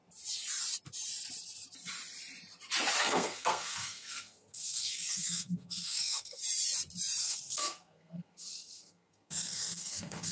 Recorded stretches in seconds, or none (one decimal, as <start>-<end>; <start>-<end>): 0.0-3.0; 6.4-7.2